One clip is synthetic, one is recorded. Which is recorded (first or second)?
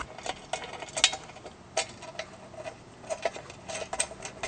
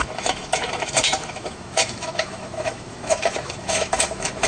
first